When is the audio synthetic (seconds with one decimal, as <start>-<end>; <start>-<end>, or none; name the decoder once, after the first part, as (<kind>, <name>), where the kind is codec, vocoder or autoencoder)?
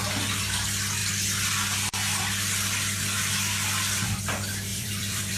4.7-5.4 (vocoder, BigVGAN v2)